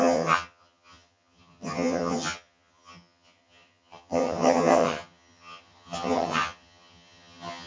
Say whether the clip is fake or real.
fake